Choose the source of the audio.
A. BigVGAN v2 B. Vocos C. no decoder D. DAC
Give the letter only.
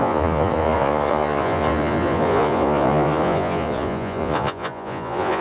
B